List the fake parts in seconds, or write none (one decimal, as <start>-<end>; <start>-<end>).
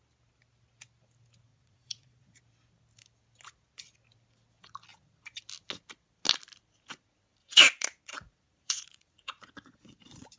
1.5-2.4; 4.9-5.4; 7.4-10.4